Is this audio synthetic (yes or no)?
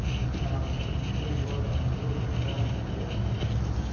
no